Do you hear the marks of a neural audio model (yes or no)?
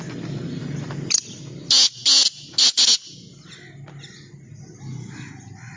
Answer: no